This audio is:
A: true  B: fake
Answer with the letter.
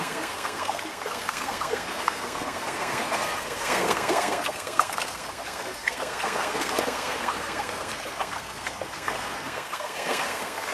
B